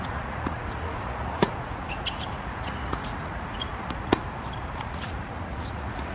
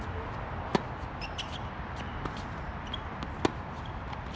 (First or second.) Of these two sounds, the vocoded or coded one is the first